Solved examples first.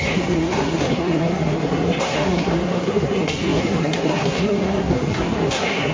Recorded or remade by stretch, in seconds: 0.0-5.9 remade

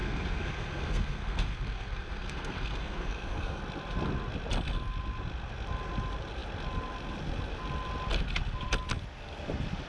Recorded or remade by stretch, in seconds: 0.0-3.6 remade; 3.6-9.9 recorded

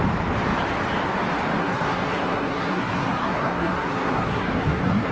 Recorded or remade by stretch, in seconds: 0.0-1.6 recorded; 1.6-5.1 remade

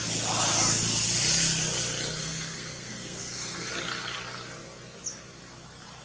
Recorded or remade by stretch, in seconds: 0.0-2.2 recorded; 2.2-3.7 remade; 3.7-6.0 recorded